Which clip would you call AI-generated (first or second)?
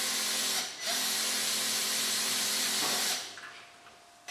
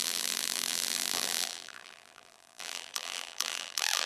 second